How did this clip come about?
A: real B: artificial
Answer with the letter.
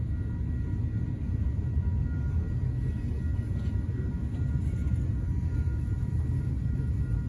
A